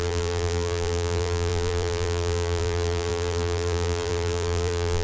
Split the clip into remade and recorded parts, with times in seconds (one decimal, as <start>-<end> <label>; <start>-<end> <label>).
0.0-5.0 remade